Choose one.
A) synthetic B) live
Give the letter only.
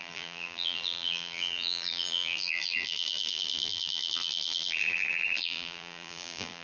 A